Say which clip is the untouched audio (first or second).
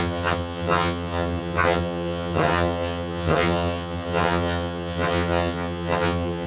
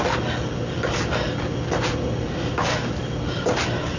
second